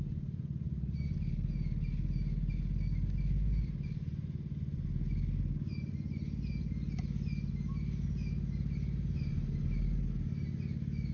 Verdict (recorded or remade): recorded